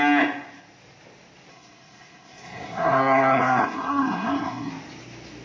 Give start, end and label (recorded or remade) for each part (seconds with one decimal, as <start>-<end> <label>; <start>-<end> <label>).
0.0-1.5 recorded; 1.5-4.7 remade; 4.7-5.4 recorded